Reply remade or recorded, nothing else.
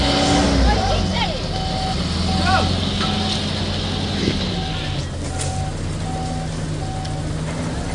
recorded